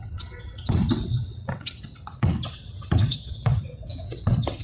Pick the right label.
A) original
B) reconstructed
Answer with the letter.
B